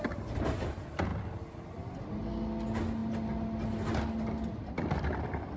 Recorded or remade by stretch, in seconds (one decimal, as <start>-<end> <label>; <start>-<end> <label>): 0.0-5.6 recorded